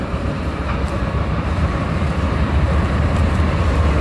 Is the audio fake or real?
fake